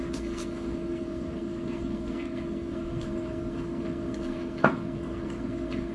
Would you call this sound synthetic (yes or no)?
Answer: yes